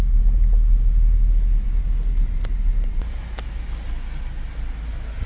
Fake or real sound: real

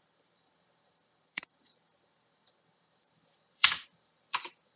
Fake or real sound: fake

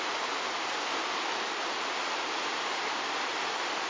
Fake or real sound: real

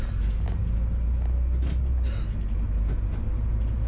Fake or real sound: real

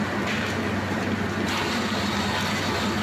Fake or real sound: real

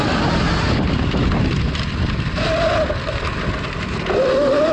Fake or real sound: real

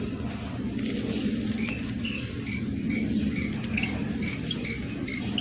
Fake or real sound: real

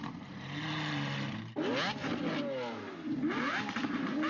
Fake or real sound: real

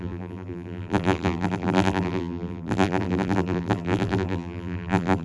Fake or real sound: fake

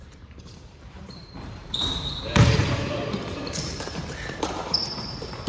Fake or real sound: fake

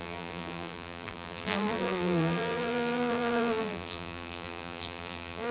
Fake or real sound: fake